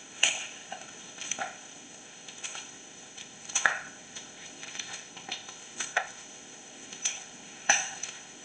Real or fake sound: fake